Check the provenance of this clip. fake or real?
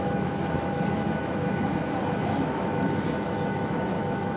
fake